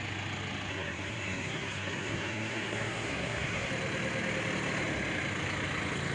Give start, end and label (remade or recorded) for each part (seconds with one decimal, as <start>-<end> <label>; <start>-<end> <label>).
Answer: 0.0-0.7 recorded; 0.7-3.7 remade; 3.7-6.1 recorded